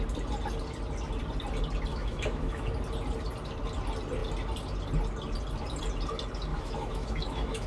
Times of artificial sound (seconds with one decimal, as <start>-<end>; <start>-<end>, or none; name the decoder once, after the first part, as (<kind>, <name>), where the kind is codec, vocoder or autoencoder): 1.9-2.7 (autoencoder, DAC-VAE); 6.5-7.7